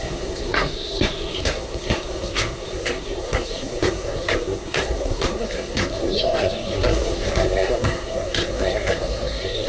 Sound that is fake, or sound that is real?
fake